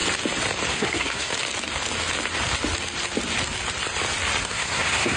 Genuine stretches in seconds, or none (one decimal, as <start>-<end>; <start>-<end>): 0.0-0.7; 1.3-4.4